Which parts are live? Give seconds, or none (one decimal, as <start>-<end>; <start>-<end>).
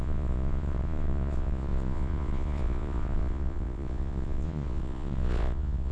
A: none